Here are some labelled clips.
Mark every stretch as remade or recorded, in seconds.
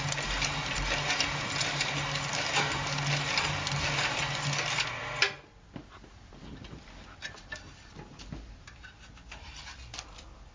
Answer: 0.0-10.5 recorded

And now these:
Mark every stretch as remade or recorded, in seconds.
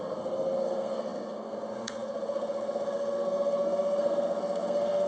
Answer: 0.0-5.1 remade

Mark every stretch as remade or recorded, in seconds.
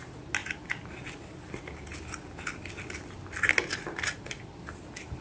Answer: 0.0-5.2 recorded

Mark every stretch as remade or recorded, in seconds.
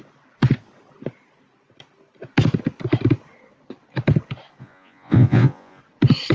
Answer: 0.0-4.6 recorded; 4.6-5.8 remade; 5.8-6.3 recorded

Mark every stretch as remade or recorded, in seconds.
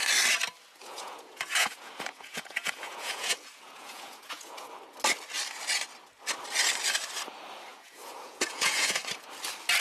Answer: 0.0-0.8 recorded; 0.8-4.7 remade; 4.7-7.7 recorded; 7.7-9.0 remade; 9.0-9.8 recorded